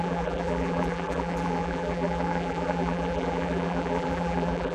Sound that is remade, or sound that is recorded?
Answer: remade